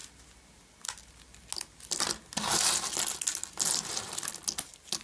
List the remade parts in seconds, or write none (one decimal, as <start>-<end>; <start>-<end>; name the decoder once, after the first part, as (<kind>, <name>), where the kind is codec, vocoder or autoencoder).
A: none